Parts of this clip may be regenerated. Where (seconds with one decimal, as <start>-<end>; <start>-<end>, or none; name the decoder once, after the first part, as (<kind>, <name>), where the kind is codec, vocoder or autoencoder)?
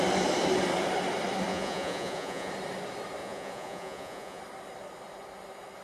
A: 1.5-2.5 (vocoder, Vocos); 3.2-4.4